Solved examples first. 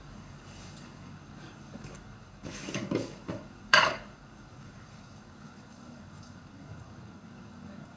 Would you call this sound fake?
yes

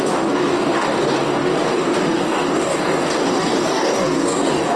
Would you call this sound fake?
yes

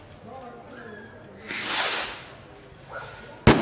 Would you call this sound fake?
no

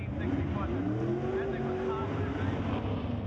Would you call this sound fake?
no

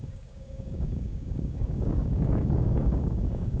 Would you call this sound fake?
yes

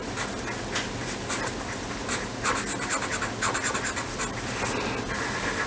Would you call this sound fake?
no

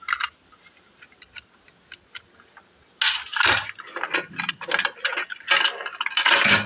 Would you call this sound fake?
no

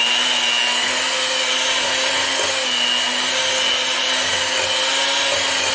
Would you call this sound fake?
no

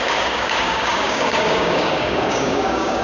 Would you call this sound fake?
yes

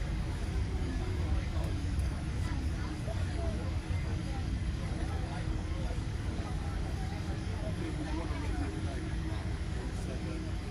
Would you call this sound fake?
yes